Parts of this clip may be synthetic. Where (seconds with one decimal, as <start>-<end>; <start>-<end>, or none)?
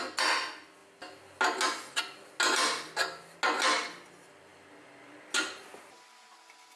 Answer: none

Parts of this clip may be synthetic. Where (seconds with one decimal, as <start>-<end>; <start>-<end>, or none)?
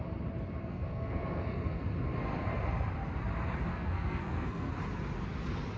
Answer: 0.6-1.8; 3.7-4.7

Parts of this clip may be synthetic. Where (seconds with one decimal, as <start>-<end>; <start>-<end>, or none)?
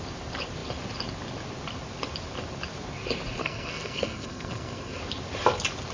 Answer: 3.4-5.0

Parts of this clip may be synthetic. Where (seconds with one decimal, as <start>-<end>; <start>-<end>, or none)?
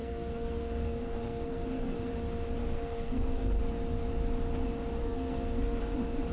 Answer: 0.0-2.1; 2.6-3.6; 5.0-5.8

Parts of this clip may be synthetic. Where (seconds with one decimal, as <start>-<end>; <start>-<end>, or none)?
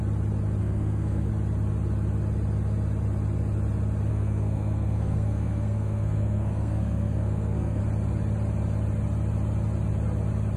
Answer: 0.6-1.3; 4.1-7.8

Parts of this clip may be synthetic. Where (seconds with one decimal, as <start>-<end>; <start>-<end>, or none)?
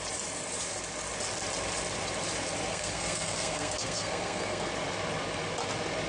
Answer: 2.7-4.7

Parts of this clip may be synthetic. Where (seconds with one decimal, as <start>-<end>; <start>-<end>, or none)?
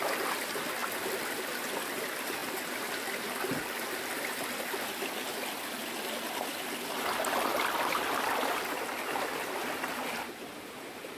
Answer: none